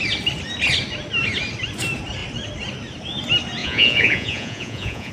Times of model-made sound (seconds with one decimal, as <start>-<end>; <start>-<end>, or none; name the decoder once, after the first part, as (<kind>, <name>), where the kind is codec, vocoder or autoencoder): 3.6-5.1 (vocoder, Vocos)